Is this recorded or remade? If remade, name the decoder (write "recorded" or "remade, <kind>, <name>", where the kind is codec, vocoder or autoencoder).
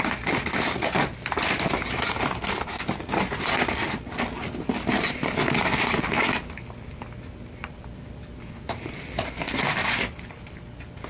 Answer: recorded